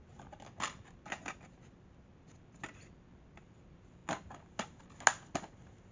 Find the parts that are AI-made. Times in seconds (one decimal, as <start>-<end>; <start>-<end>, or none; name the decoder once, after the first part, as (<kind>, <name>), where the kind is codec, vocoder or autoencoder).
none